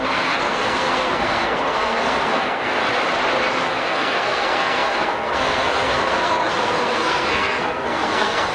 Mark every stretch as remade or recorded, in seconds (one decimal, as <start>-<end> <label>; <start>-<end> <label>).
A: 0.0-2.8 remade; 2.8-3.5 recorded; 3.5-8.5 remade